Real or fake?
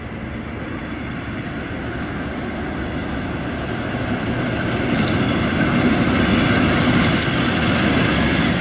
real